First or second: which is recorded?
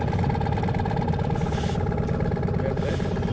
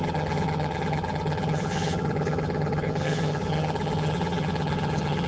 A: first